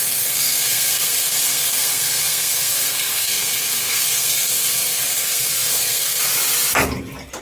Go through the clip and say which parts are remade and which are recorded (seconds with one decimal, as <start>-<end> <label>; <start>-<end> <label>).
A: 0.0-6.2 remade; 6.2-7.4 recorded